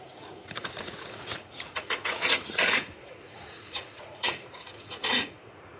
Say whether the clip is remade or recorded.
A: remade